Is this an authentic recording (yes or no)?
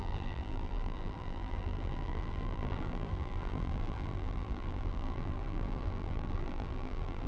no